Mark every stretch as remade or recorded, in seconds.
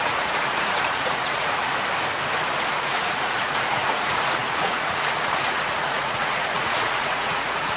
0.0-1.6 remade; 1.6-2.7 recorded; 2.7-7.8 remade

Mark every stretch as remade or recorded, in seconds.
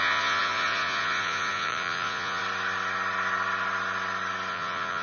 0.0-2.4 remade; 2.4-4.5 recorded; 4.5-5.0 remade